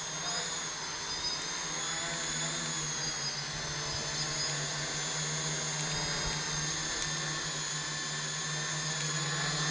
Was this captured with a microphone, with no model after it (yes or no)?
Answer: yes